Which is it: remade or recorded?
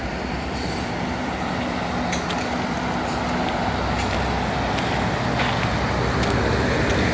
recorded